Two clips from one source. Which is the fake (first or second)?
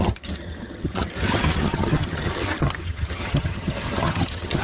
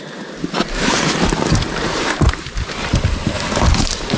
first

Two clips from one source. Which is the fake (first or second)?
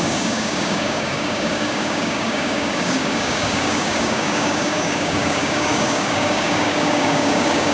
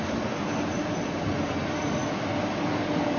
first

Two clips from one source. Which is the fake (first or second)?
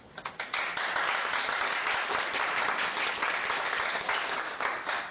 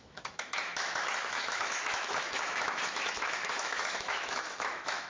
second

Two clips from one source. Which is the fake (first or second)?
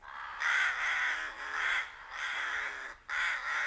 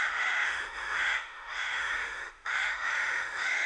second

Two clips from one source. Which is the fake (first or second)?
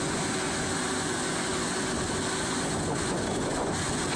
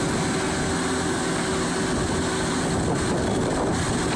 first